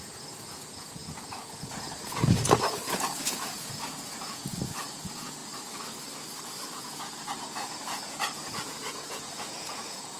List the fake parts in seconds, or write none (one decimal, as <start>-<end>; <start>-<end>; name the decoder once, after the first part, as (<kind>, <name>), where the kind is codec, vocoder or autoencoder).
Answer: 0.0-5.4 (vocoder, Vocos); 6.7-10.2